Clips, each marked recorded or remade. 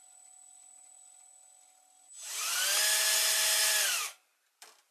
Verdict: recorded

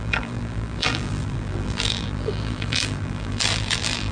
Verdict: remade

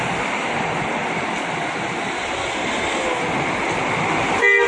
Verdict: recorded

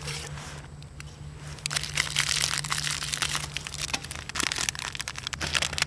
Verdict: recorded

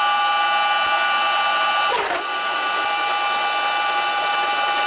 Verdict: recorded